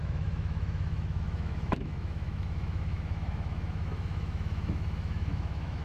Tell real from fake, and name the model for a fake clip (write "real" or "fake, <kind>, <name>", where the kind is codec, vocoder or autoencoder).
fake, autoencoder, DAC-VAE